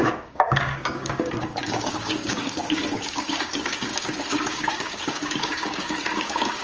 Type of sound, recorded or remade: remade